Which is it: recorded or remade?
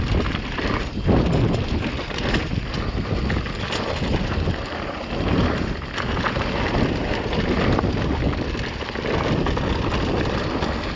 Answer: recorded